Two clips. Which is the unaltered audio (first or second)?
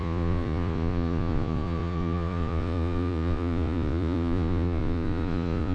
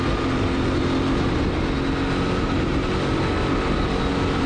second